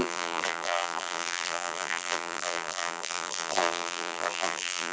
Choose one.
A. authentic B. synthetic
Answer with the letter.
B